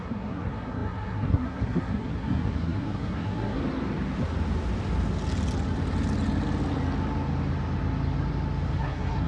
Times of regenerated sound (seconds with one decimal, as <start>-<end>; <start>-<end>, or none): 0.0-3.6; 8.8-9.3